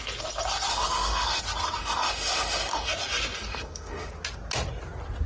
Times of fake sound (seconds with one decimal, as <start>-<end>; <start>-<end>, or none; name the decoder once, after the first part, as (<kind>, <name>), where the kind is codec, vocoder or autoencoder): 0.7-1.4 (autoencoder, DAC-VAE); 1.8-2.9; 3.5-4.1